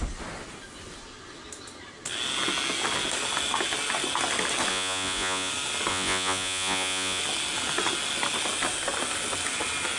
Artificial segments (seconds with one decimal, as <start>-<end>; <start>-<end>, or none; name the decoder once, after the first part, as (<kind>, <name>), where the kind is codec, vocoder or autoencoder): 4.7-5.5 (vocoder, Vocos); 5.9-7.2